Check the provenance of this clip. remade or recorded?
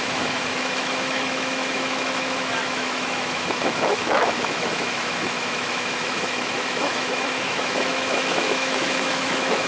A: remade